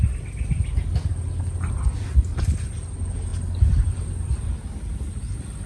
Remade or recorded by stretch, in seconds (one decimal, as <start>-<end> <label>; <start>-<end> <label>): 0.0-5.7 recorded